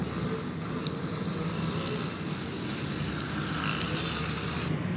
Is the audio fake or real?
real